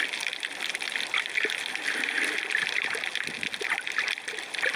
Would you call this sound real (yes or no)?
yes